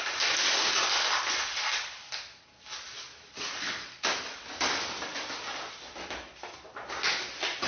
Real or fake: real